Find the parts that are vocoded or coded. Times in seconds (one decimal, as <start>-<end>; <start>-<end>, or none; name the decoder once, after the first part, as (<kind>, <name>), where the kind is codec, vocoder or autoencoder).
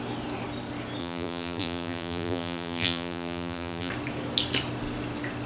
1.0-3.9 (vocoder, BigVGAN v2)